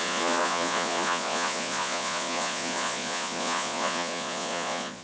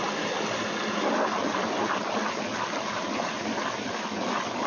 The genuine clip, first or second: second